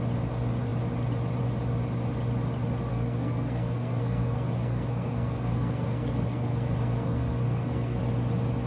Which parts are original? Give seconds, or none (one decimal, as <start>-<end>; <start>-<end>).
0.0-2.9; 8.0-8.7

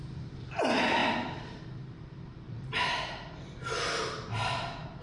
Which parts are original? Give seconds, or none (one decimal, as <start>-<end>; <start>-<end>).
0.0-1.0; 4.0-5.0

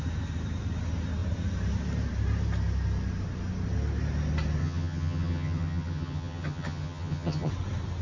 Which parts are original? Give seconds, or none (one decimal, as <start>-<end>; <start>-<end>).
0.0-4.6; 7.5-8.0

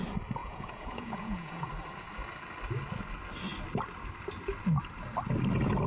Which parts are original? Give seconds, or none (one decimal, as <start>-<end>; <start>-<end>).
0.0-0.4; 1.7-5.9

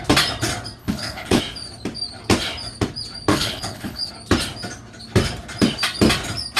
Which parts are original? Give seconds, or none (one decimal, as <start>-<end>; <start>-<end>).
0.0-0.8; 1.4-3.3; 4.1-6.6